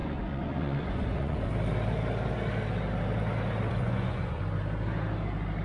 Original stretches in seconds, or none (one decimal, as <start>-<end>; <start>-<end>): 1.5-3.7; 4.4-5.6

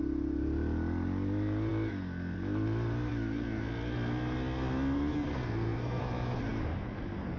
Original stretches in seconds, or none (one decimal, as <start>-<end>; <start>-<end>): 0.0-5.3; 6.0-7.4

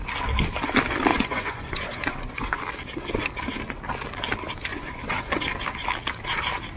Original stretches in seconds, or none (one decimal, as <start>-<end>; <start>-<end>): 0.0-1.1; 2.6-4.7; 5.4-6.8

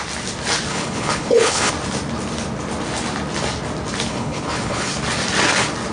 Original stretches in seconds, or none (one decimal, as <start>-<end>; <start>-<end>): 0.0-0.7; 1.7-4.1; 4.9-5.9